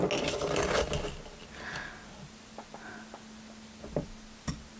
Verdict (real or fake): real